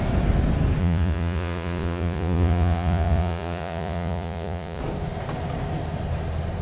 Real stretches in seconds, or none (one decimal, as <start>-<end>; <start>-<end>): 0.0-0.8; 4.8-6.6